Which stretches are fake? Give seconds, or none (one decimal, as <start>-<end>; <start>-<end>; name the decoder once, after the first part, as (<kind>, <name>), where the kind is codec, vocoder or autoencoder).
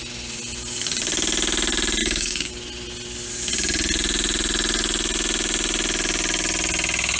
2.0-2.5 (codec, DAC)